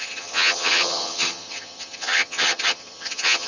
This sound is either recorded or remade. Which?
remade